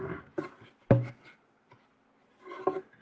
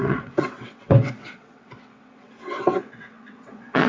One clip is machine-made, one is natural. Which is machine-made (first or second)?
second